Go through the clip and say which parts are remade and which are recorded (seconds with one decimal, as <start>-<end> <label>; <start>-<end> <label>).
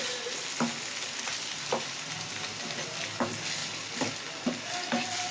0.0-0.7 recorded; 0.7-2.6 remade; 2.6-5.3 recorded